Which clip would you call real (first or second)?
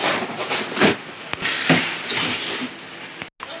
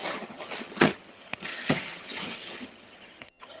first